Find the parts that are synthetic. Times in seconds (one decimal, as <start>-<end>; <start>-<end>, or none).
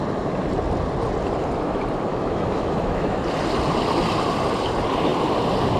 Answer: 2.1-3.2